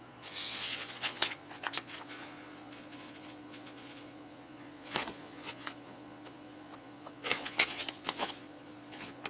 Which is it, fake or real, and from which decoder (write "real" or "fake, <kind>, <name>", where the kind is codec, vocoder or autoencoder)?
fake, vocoder, Vocos